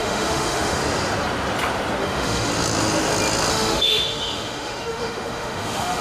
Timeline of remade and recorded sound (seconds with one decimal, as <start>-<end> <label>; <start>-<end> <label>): 0.0-0.8 remade; 0.8-2.0 recorded; 2.0-2.5 remade; 2.5-3.5 recorded; 3.5-6.0 remade